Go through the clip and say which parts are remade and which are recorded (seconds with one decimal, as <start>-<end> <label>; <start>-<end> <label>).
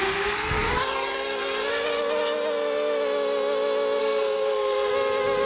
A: 0.0-0.7 remade; 0.7-4.0 recorded; 4.0-4.9 remade; 4.9-5.5 recorded